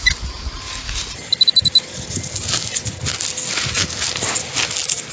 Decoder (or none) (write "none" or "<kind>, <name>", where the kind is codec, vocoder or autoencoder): none